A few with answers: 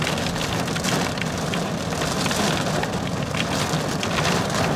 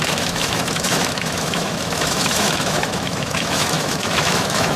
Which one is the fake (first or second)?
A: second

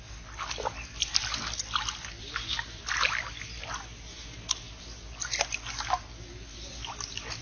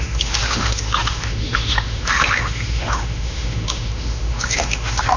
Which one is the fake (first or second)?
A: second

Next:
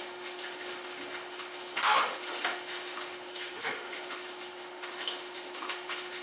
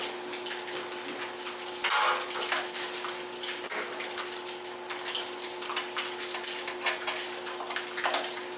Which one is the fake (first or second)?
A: first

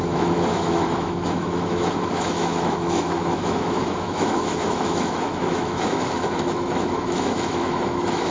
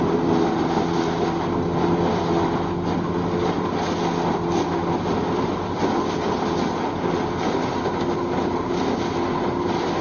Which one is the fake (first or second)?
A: first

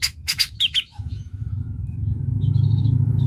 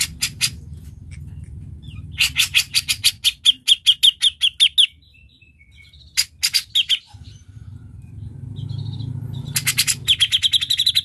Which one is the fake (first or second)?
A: first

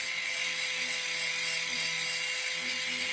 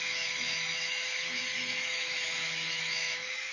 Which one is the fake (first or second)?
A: second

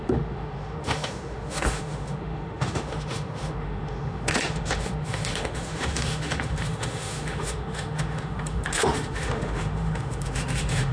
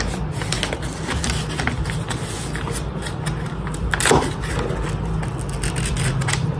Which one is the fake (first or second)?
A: first